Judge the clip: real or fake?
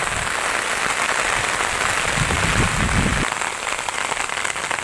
real